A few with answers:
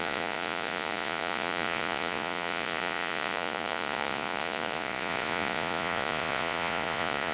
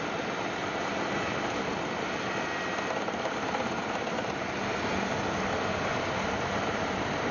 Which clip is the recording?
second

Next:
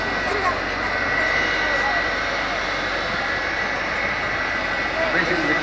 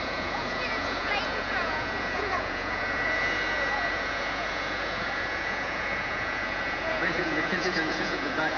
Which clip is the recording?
first